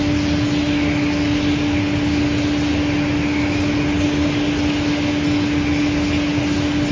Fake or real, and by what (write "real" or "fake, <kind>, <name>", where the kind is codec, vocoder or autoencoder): real